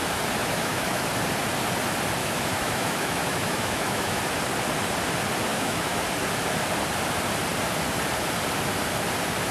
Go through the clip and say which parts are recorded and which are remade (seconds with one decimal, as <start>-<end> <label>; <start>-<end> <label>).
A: 0.0-0.4 recorded; 0.4-1.0 remade; 1.0-2.2 recorded; 2.2-4.2 remade; 4.2-5.5 recorded; 5.5-6.0 remade; 6.0-9.5 recorded